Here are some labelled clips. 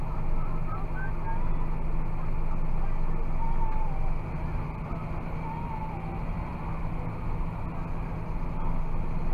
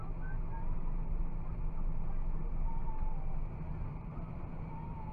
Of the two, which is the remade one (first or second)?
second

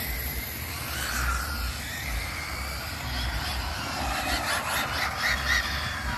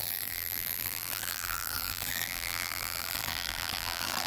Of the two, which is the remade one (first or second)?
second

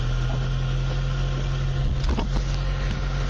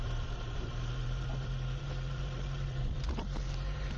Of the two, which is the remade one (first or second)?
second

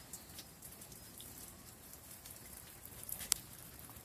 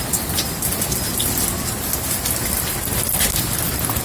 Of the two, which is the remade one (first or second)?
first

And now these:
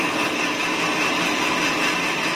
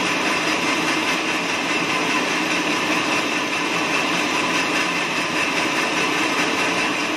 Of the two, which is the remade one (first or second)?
second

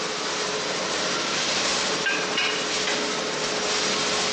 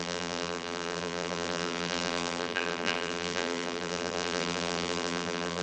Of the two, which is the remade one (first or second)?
second